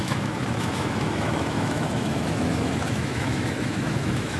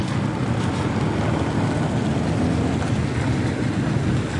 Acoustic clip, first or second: second